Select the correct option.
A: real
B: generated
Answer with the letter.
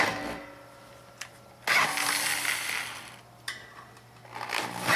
A